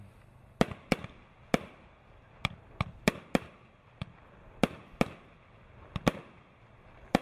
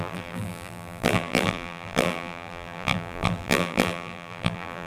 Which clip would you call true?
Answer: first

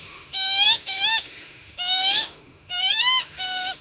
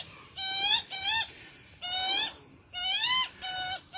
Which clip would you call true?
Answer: second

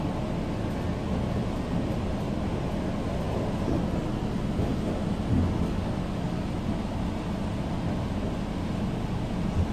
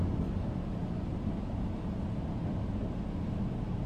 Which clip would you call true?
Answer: first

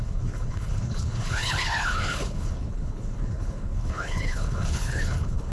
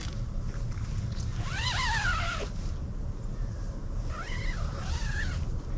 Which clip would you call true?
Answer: second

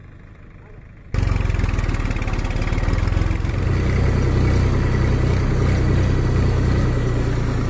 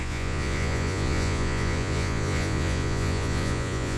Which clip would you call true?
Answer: first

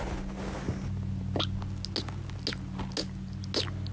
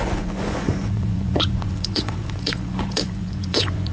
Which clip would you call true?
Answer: first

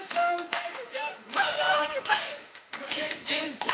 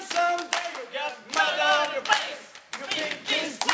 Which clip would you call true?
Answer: second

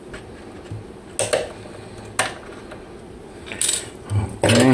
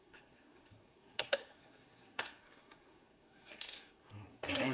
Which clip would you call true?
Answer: first